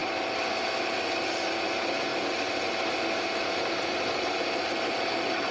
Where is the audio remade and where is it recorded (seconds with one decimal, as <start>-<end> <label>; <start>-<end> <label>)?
0.0-5.5 recorded